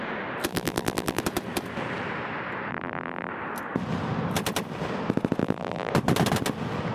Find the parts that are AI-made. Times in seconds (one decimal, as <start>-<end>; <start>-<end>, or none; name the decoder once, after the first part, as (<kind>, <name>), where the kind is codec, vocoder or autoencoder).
0.5-1.2 (vocoder, BigVGAN v2); 2.7-3.3; 5.4-5.9